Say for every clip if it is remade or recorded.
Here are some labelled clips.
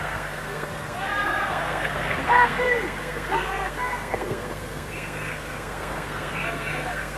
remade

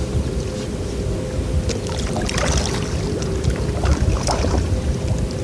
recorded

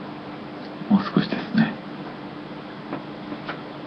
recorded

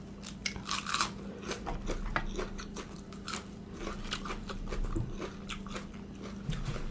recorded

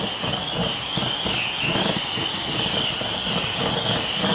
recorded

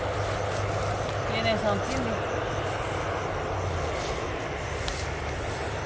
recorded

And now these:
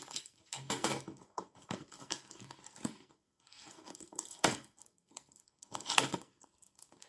remade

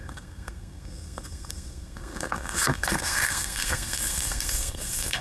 remade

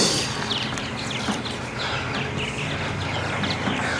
recorded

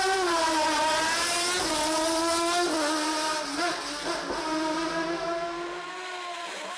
recorded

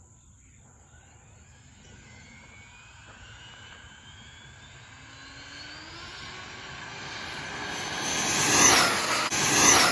recorded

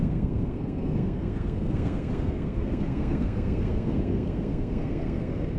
remade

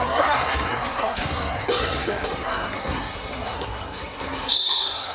remade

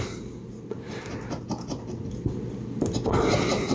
recorded